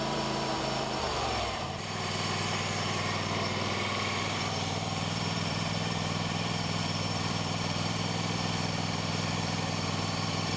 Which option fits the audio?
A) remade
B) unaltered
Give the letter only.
A